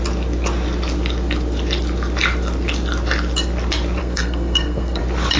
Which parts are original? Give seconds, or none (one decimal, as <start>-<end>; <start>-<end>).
0.0-4.0; 5.0-5.4